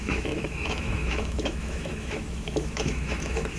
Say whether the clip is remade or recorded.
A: remade